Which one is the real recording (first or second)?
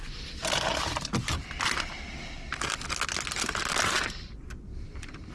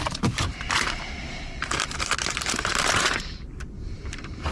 first